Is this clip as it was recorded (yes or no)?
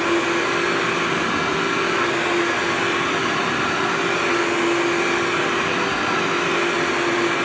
yes